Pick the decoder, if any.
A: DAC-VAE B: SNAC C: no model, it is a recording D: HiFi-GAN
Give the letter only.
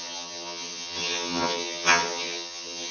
D